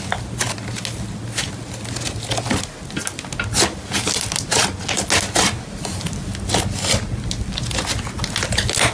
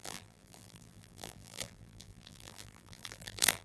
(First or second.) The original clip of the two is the first